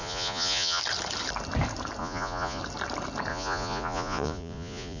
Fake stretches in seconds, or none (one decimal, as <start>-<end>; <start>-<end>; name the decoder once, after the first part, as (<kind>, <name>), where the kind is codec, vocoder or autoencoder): 0.0-0.8 (vocoder, Vocos); 2.0-2.6; 3.3-5.0